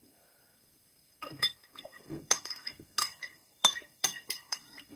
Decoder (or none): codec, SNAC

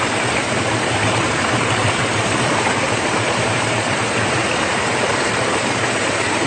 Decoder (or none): vocoder, BigVGAN v2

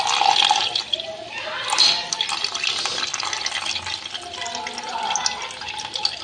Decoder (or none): none